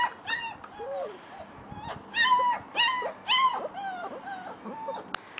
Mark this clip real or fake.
real